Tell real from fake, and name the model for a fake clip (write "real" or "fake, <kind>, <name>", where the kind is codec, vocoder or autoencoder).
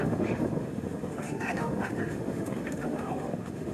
fake, autoencoder, DAC-VAE